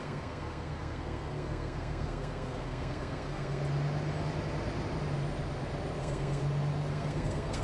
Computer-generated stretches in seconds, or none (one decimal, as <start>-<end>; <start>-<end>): 0.0-3.6; 6.0-6.4; 6.9-7.6